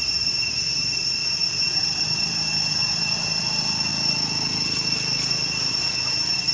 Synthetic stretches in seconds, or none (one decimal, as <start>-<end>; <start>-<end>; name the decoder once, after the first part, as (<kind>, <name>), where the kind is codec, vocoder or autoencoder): 0.0-3.9 (vocoder, BigVGAN v2); 5.7-6.5